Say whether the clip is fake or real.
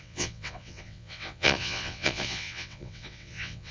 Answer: fake